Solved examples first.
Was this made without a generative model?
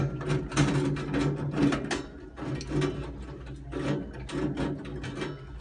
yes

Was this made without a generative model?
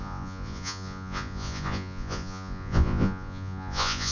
no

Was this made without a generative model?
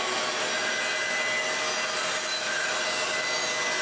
yes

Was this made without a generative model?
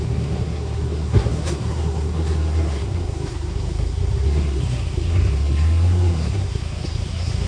no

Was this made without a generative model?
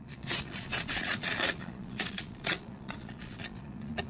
no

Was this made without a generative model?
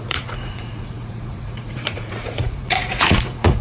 no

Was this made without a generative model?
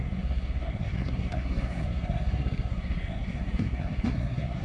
no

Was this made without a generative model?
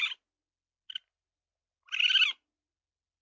yes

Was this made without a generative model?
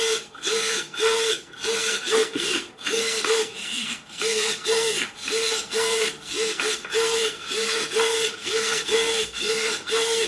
no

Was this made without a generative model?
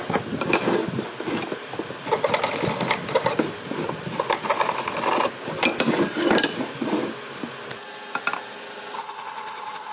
yes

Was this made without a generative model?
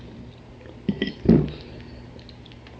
yes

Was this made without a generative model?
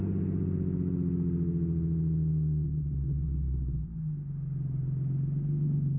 yes